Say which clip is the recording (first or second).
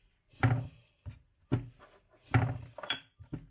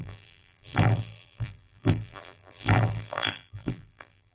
first